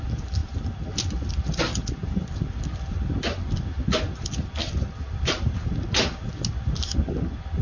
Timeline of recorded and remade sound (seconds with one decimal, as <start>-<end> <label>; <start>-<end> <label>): 0.0-7.6 recorded